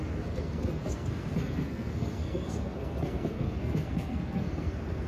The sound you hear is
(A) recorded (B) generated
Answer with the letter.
B